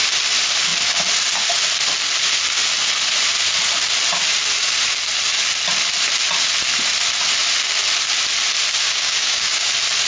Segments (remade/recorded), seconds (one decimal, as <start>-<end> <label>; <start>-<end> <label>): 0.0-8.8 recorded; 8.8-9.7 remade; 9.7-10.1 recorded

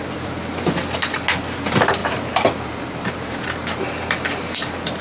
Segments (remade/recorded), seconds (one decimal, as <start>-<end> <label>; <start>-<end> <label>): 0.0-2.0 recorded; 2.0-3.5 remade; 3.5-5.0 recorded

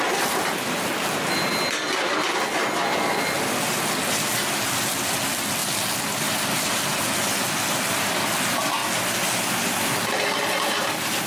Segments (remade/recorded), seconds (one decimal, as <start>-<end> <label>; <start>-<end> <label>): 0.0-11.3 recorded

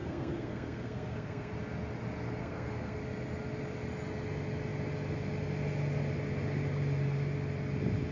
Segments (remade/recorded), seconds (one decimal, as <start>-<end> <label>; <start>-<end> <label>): 0.0-1.5 remade; 1.5-2.4 recorded; 2.4-3.0 remade; 3.0-8.1 recorded